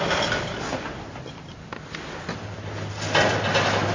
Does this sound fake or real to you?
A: real